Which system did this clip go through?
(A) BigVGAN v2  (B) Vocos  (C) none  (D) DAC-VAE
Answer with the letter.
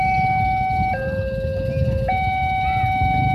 C